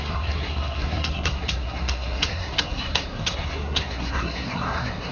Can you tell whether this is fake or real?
fake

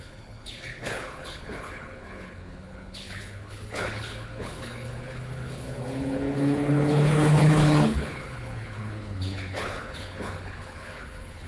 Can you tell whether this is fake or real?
fake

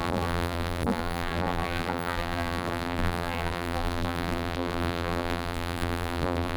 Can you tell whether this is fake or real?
fake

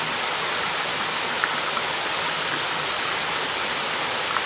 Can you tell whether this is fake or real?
real